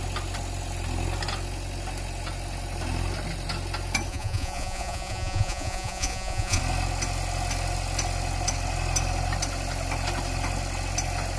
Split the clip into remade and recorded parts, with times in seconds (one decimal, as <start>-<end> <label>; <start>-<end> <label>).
0.0-4.1 recorded; 4.1-6.6 remade; 6.6-11.4 recorded